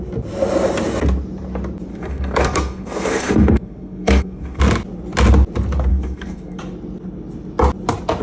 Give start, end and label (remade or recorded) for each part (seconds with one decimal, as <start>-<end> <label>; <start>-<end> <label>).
0.0-1.9 recorded; 1.9-4.6 remade; 4.6-5.9 recorded; 5.9-6.6 remade; 6.6-8.2 recorded